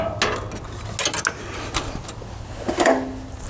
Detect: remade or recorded recorded